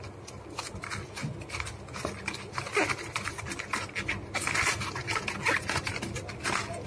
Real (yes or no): yes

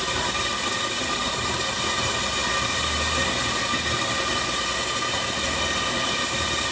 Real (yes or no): yes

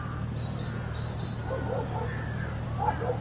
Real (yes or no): yes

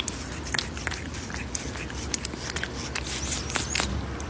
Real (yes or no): yes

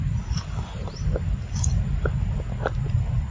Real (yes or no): yes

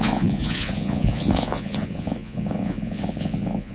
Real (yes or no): no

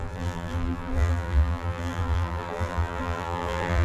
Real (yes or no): no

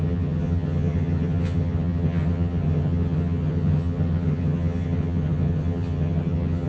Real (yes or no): no